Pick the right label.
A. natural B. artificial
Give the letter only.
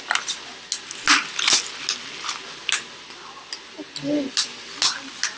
A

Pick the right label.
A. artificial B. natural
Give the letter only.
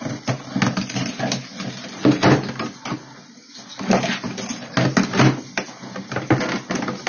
B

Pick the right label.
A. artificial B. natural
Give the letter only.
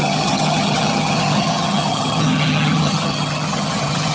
A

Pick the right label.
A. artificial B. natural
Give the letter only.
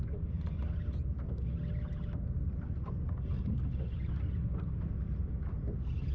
B